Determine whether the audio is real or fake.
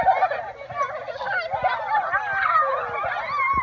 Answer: real